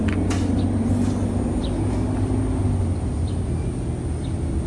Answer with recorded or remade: recorded